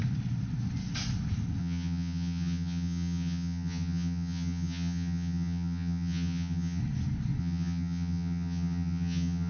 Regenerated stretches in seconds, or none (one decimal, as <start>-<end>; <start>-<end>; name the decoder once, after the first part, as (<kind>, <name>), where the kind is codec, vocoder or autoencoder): 1.6-6.8 (vocoder, HiFi-GAN); 7.4-9.5